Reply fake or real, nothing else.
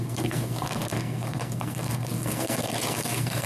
fake